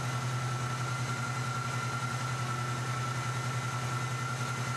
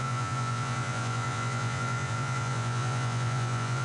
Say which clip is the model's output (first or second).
second